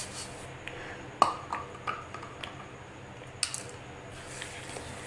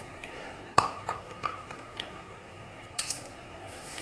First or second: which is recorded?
first